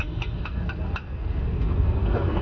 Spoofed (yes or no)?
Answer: yes